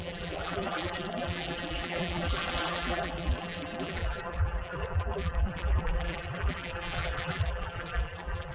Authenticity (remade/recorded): remade